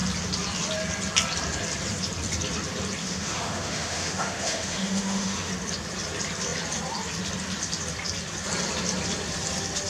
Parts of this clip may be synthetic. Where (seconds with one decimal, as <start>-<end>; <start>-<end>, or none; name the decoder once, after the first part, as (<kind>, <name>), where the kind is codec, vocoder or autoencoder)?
3.0-5.5 (autoencoder, DAC-VAE)